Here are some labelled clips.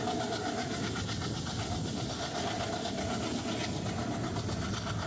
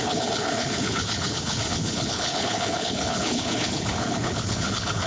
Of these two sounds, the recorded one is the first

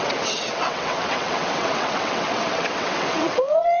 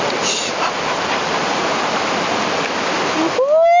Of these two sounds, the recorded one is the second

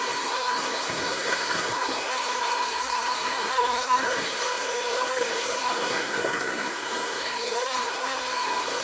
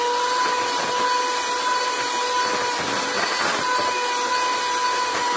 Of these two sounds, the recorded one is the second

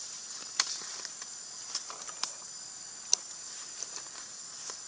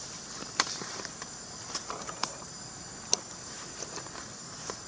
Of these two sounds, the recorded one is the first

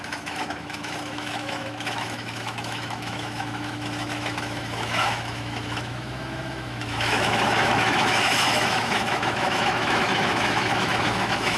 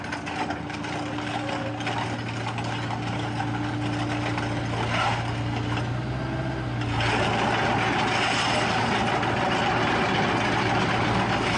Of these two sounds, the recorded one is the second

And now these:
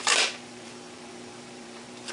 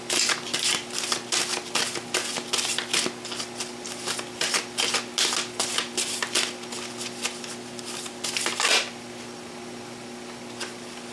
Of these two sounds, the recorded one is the second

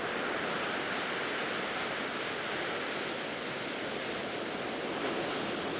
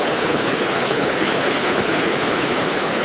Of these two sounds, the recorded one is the first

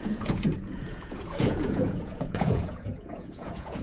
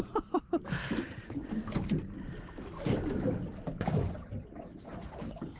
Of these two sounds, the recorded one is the second